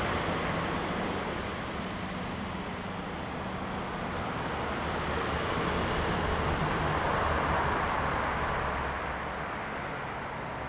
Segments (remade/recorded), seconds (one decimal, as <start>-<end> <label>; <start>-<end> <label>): 0.0-10.7 recorded